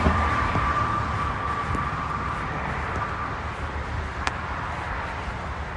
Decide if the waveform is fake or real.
fake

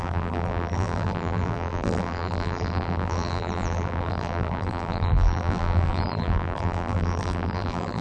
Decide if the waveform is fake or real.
fake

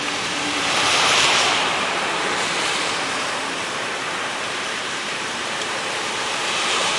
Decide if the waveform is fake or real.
fake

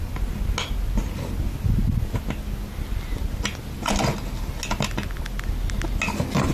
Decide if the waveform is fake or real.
real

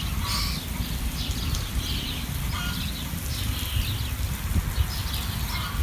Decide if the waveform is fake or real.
real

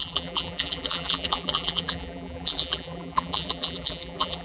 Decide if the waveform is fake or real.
fake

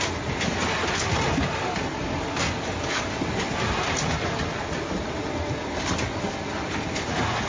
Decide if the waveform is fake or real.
real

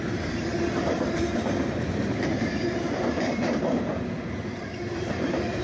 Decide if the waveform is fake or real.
fake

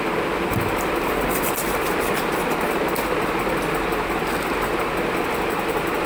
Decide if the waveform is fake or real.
real